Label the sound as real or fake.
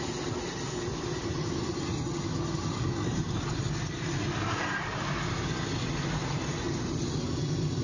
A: real